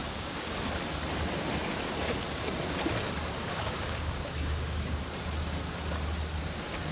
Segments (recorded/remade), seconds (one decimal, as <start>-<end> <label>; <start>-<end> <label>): 0.0-0.5 remade; 0.5-3.4 recorded; 3.4-5.0 remade; 5.0-6.9 recorded